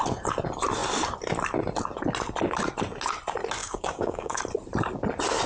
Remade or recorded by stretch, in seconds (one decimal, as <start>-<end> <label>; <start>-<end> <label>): 0.0-3.6 recorded; 3.6-4.4 remade; 4.4-5.5 recorded